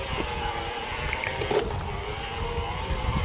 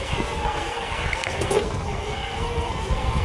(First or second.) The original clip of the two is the first